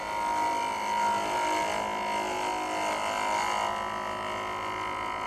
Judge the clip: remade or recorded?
recorded